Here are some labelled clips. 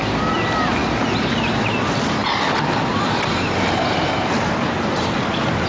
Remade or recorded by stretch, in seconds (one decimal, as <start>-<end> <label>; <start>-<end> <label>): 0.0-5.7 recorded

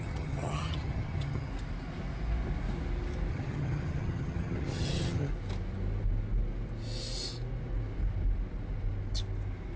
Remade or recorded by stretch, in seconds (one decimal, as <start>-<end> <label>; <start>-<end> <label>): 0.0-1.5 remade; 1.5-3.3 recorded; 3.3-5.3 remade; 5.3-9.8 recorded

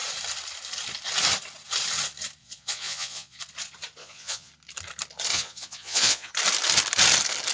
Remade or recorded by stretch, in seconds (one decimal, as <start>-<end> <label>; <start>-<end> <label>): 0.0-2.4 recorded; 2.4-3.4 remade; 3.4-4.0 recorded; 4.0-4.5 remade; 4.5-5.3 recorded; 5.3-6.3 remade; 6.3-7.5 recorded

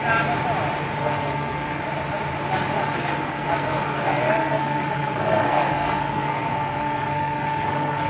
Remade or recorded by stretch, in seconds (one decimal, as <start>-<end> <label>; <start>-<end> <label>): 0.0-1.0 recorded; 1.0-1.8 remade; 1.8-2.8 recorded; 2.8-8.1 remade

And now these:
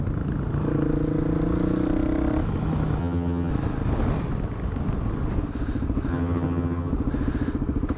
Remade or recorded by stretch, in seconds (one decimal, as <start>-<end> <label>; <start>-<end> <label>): 0.0-3.0 recorded; 3.0-3.5 remade; 3.5-6.1 recorded; 6.1-6.9 remade; 6.9-8.0 recorded

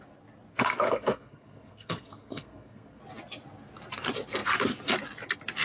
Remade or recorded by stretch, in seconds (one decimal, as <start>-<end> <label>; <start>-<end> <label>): 0.0-0.5 recorded; 0.5-3.0 remade; 3.0-5.6 recorded